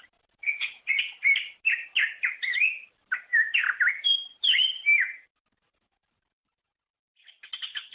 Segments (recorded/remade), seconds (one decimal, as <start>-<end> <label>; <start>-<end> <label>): 0.0-7.9 recorded